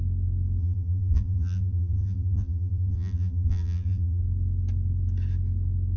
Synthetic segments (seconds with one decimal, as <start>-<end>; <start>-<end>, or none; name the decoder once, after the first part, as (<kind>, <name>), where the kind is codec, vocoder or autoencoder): 0.6-4.2 (vocoder, BigVGAN v2)